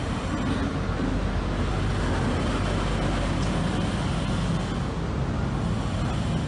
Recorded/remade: recorded